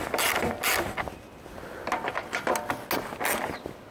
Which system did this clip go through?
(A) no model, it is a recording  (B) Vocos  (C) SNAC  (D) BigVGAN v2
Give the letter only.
A